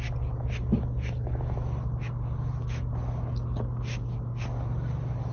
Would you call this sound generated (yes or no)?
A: no